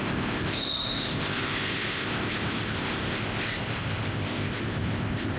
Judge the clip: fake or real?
fake